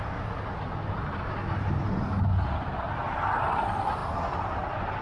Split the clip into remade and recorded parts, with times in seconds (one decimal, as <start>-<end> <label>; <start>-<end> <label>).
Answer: 0.0-5.0 recorded